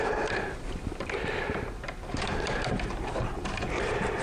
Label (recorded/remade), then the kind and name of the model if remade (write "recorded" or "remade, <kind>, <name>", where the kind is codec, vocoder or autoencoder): remade, vocoder, BigVGAN v2